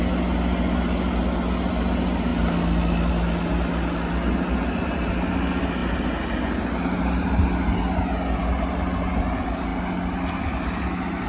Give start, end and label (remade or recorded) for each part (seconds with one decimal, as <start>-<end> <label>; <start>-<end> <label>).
0.0-11.3 recorded